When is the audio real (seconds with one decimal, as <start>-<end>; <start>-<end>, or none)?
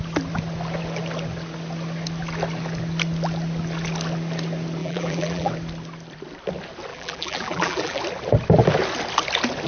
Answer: 0.0-4.8; 5.5-6.9; 8.0-9.7